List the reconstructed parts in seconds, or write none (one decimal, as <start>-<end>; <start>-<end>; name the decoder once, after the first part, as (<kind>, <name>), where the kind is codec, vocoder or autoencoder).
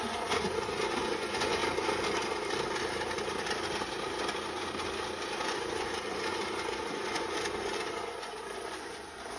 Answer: 0.0-1.6 (vocoder, Vocos); 5.4-9.4